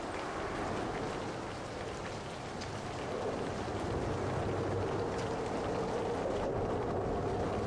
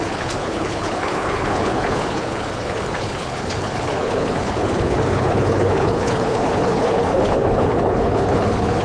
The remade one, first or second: second